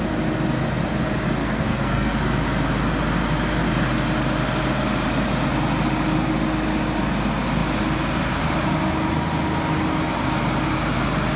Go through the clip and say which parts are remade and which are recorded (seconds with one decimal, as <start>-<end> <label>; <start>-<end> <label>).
0.0-1.4 recorded; 1.4-2.2 remade; 2.2-11.4 recorded